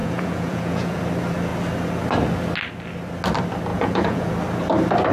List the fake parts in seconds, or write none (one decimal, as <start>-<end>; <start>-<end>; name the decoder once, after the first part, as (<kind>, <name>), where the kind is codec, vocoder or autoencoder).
0.0-1.0 (vocoder, Vocos); 3.7-4.3